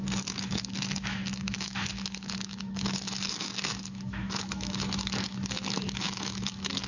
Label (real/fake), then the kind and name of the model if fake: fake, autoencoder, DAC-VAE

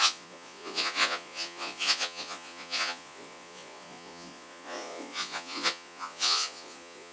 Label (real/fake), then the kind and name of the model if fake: fake, vocoder, Vocos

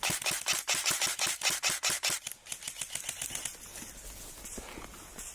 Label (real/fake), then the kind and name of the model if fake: real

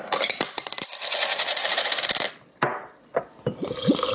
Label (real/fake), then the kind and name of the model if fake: real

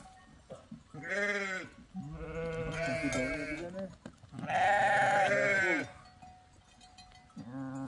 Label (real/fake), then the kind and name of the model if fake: real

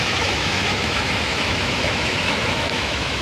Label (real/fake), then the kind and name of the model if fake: fake, autoencoder, DAC-VAE